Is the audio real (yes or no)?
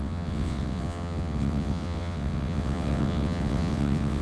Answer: no